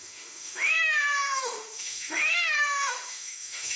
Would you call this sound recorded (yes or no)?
no